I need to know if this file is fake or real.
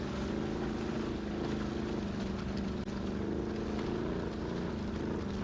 real